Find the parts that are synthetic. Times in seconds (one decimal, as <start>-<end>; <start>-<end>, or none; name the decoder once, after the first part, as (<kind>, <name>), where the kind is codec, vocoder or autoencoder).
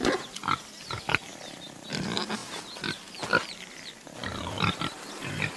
none